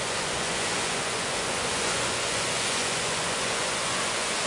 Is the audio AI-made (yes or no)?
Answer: yes